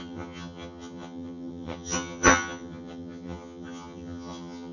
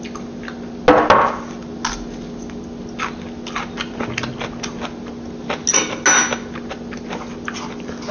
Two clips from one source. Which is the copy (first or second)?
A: first